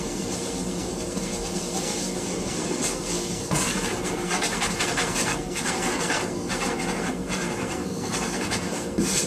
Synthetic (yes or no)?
yes